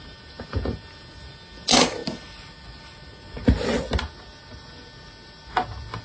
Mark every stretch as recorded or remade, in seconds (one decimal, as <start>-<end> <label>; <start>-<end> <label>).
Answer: 0.0-6.0 recorded